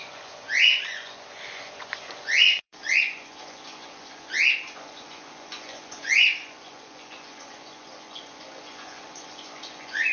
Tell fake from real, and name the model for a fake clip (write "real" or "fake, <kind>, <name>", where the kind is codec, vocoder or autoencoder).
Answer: fake, vocoder, Vocos